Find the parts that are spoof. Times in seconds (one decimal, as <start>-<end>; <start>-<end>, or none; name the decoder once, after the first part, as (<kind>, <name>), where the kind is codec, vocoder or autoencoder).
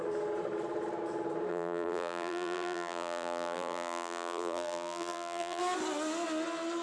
1.5-5.6 (vocoder, BigVGAN v2)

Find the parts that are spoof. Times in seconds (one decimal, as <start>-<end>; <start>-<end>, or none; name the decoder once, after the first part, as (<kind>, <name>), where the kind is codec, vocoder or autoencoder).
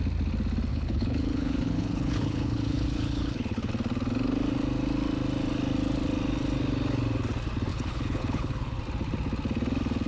0.7-3.7 (codec, HILCodec); 7.7-8.8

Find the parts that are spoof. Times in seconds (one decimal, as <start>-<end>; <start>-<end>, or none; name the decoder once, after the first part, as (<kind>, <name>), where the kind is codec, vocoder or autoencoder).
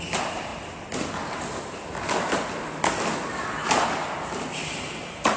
none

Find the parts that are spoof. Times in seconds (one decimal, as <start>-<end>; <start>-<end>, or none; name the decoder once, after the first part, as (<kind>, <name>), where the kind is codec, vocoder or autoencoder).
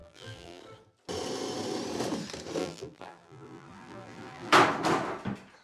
0.0-0.6 (vocoder, BigVGAN v2); 2.6-4.5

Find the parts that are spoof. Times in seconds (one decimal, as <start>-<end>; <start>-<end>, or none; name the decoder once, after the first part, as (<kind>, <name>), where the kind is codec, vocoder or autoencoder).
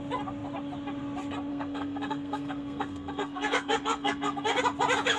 1.5-4.6 (codec, SNAC)